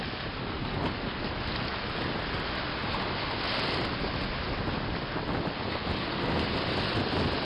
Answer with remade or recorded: recorded